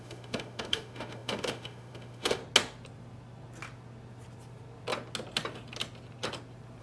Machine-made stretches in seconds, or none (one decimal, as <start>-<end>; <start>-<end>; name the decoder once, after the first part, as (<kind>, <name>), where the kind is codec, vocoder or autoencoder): 0.0-2.4 (autoencoder, DAC-VAE)